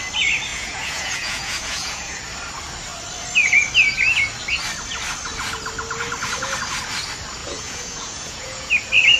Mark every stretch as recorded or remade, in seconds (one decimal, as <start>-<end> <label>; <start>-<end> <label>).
0.0-0.5 recorded; 0.5-2.2 remade; 2.2-7.4 recorded; 7.4-8.7 remade; 8.7-9.2 recorded